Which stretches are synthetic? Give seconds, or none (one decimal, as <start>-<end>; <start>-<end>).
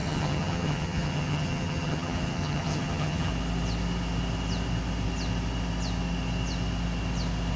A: 0.0-3.3